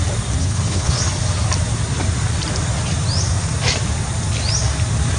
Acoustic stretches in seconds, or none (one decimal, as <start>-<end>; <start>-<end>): 0.0-0.4; 1.0-5.2